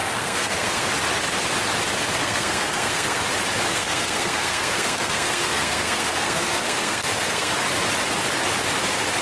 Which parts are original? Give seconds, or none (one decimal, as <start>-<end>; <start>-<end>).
0.9-2.2; 3.2-3.7; 7.5-9.2

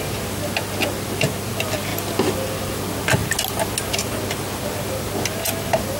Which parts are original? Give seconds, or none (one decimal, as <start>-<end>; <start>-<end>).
0.0-6.0

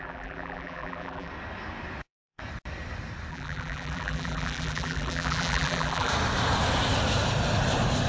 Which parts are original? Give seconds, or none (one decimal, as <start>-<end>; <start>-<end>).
1.3-2.0; 2.4-3.3; 6.1-8.1

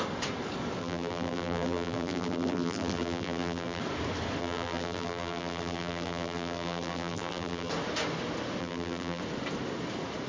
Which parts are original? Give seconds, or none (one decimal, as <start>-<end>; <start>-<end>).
0.0-0.8; 3.8-4.4; 7.7-8.6; 9.2-10.3

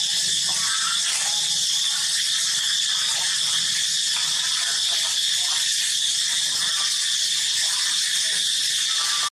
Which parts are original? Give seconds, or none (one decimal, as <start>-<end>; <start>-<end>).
0.0-9.3

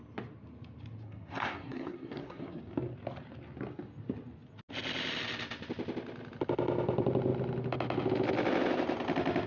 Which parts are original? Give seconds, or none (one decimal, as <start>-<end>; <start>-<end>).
0.0-1.0; 2.6-9.5

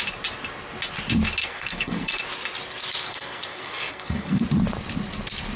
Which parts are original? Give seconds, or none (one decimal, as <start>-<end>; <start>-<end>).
0.0-1.4; 2.2-3.0; 4.4-5.6

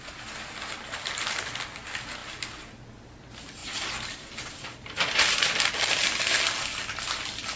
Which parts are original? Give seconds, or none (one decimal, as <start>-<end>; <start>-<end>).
0.0-2.2; 2.8-3.6; 7.0-7.6